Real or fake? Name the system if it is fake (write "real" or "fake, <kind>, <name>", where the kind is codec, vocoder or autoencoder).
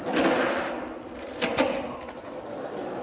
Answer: real